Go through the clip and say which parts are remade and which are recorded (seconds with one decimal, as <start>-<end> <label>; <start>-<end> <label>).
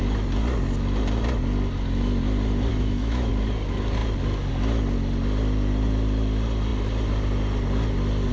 0.0-2.7 recorded; 2.7-3.3 remade; 3.3-8.3 recorded